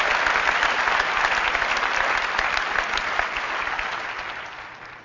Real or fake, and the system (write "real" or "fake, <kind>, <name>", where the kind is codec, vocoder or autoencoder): real